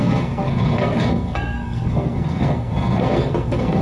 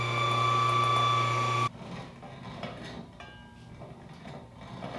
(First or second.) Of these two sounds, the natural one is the second